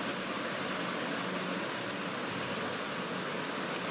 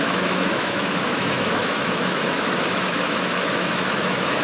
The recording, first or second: first